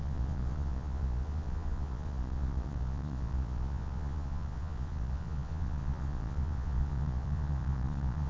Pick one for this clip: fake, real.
fake